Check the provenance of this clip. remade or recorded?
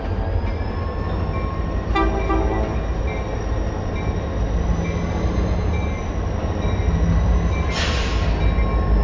recorded